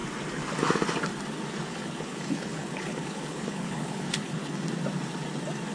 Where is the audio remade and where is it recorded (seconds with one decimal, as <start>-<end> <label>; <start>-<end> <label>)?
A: 0.0-1.7 recorded; 1.7-4.5 remade; 4.5-5.7 recorded